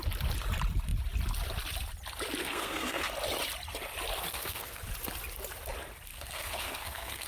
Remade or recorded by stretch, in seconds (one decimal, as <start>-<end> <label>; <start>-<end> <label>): 0.0-2.4 recorded; 2.4-3.1 remade; 3.1-4.3 recorded; 4.3-4.8 remade; 4.8-6.1 recorded; 6.1-7.3 remade